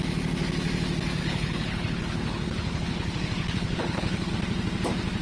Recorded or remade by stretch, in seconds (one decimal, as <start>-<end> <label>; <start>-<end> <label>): 0.0-1.2 recorded; 1.2-4.3 remade; 4.3-5.2 recorded

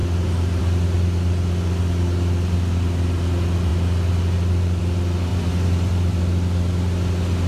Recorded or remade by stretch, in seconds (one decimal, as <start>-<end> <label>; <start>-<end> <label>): 0.0-5.3 recorded; 5.3-6.2 remade; 6.2-7.5 recorded

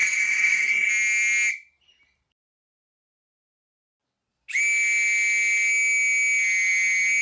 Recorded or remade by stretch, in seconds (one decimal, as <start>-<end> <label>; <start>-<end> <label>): 0.0-0.9 remade; 0.9-7.2 recorded